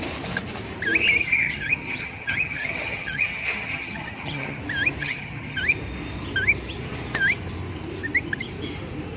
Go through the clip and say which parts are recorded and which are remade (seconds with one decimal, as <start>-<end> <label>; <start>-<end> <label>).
0.0-1.2 recorded; 1.2-4.6 remade; 4.6-5.0 recorded; 5.0-5.6 remade; 5.6-9.2 recorded